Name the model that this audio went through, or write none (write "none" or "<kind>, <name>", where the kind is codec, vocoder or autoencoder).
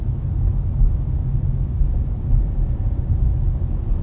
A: none